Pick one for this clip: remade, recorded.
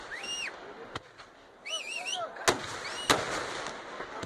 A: recorded